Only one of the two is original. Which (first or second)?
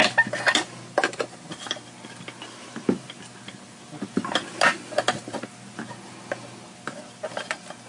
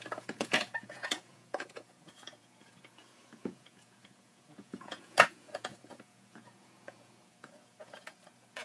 first